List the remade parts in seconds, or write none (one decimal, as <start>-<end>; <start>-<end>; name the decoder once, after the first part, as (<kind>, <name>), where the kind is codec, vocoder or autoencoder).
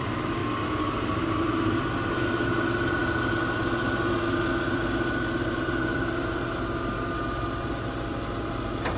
0.0-0.4 (vocoder, BigVGAN v2); 1.2-9.0